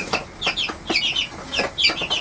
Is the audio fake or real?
real